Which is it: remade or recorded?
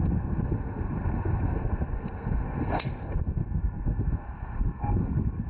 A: remade